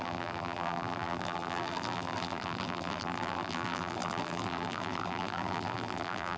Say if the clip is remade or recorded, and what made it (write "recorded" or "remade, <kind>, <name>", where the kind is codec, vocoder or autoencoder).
remade, vocoder, BigVGAN v2